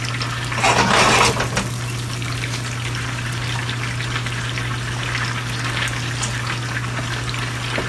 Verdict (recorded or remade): recorded